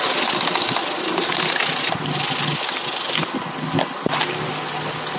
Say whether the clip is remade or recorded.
recorded